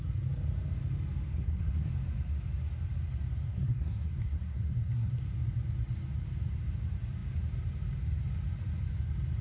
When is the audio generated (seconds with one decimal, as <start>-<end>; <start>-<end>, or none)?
1.3-1.9; 3.5-5.1

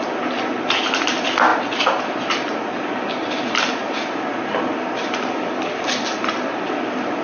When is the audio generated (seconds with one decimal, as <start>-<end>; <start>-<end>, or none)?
none

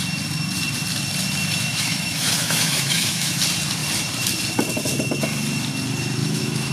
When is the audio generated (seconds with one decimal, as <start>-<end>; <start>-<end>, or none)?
1.4-3.4; 6.2-6.7

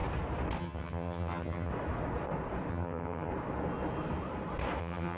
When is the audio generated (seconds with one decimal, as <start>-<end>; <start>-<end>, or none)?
0.6-1.7; 2.7-3.3; 4.8-5.2

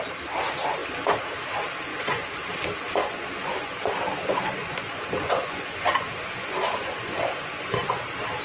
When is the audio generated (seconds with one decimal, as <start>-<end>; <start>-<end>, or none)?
1.9-2.5; 3.0-4.0; 4.6-8.0

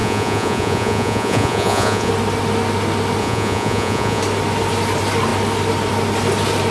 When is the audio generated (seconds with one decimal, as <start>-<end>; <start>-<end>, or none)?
0.0-2.1; 3.2-4.2

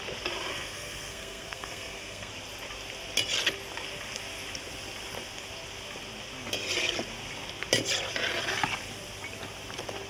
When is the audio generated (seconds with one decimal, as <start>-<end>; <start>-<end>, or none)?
0.5-2.3

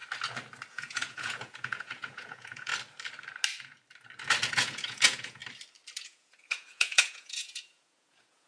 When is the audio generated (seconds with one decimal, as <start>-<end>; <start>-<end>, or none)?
0.7-2.7; 4.5-5.4; 6.0-8.5